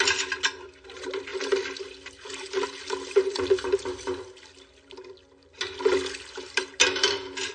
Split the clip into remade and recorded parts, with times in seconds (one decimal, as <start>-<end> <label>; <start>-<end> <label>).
0.0-7.5 recorded